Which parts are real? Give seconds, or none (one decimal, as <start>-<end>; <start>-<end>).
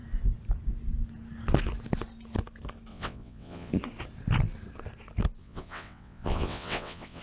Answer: 0.0-2.9; 3.7-5.4